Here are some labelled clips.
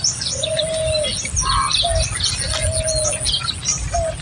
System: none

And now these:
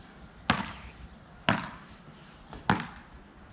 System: none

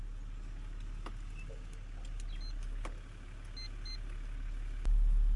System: none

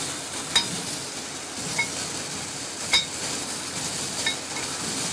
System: none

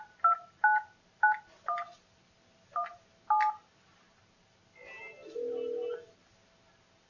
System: none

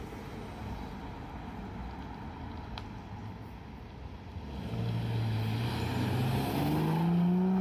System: none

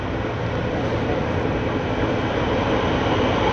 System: none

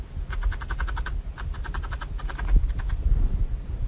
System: none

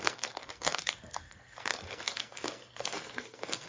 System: codec, SNAC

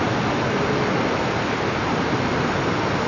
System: none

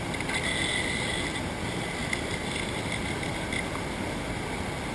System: none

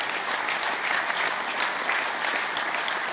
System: none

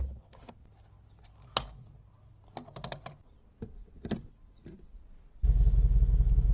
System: none